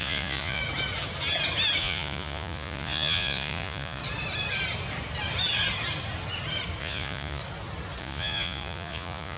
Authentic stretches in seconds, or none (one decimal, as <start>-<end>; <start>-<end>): 0.6-1.8; 4.0-6.8; 7.4-8.0